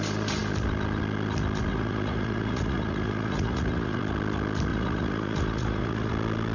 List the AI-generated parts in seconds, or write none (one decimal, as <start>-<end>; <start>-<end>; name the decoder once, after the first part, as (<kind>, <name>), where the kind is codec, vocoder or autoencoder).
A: 1.7-4.0 (vocoder, Vocos); 4.7-6.1